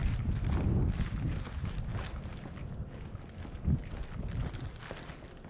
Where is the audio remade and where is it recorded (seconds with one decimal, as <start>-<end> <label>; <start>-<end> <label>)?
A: 0.0-0.9 recorded; 0.9-1.9 remade; 1.9-5.5 recorded